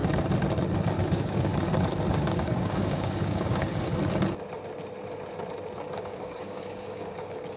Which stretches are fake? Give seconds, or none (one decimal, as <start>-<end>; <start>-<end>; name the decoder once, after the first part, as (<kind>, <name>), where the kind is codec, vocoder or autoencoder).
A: 1.1-1.5 (codec, DAC); 2.1-3.7; 5.8-7.6